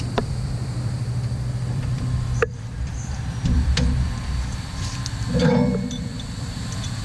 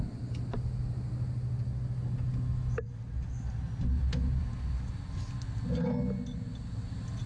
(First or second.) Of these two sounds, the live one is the second